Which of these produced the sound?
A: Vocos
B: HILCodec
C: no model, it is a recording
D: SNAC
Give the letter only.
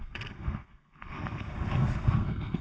D